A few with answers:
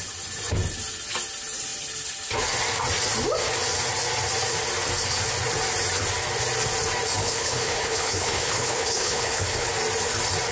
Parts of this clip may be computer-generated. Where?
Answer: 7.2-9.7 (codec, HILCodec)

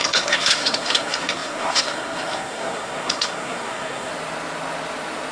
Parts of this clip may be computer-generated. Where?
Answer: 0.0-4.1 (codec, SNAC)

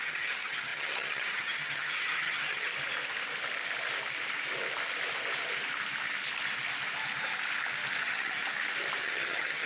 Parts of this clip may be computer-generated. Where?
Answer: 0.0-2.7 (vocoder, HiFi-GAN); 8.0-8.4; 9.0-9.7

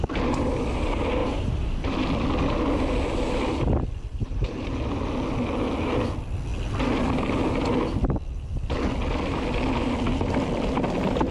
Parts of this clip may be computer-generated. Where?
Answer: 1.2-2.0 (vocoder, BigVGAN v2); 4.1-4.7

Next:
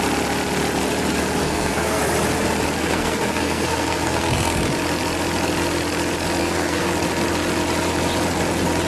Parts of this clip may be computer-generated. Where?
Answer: 1.4-2.0 (codec, SNAC); 2.8-4.6; 6.4-6.9

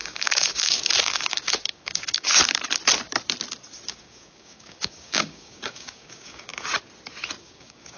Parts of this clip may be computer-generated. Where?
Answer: 0.0-2.3 (codec, DAC); 3.9-6.5; 7.4-8.0

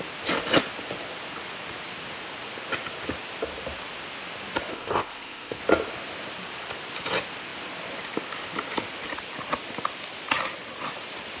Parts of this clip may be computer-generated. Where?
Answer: 4.7-5.6 (codec, ZipCodec)